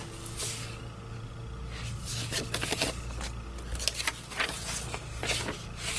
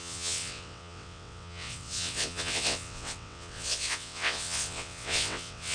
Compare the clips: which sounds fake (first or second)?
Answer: second